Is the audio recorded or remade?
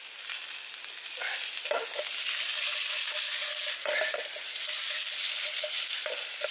recorded